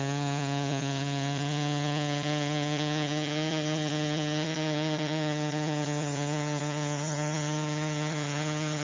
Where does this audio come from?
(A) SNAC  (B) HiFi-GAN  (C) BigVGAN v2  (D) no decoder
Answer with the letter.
B